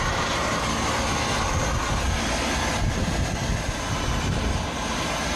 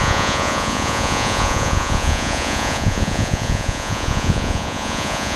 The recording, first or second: first